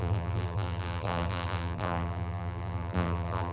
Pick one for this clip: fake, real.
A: fake